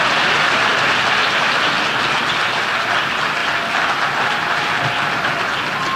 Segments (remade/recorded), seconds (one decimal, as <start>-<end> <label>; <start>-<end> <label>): 0.0-6.0 recorded